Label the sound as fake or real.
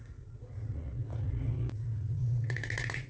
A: fake